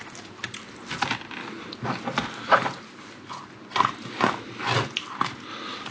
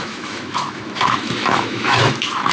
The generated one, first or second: second